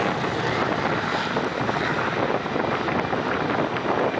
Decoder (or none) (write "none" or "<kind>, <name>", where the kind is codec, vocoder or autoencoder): none